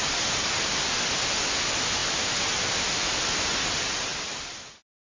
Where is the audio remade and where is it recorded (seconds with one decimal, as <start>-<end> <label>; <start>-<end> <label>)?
0.0-4.1 recorded; 4.1-4.7 remade; 4.7-5.2 recorded